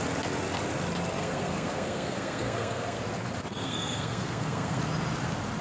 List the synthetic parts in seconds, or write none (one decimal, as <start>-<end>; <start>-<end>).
1.2-3.0; 3.5-4.8